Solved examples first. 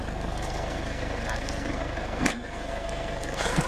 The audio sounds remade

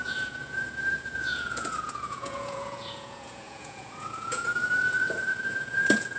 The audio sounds remade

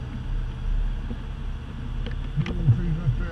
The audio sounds recorded